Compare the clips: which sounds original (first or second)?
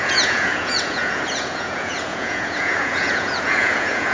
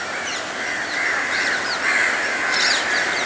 second